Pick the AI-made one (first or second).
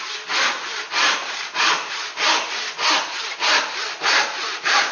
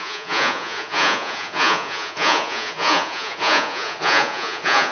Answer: second